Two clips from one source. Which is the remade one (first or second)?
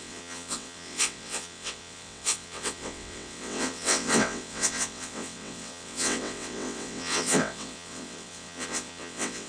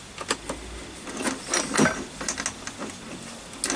first